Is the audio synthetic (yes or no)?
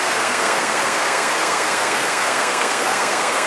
yes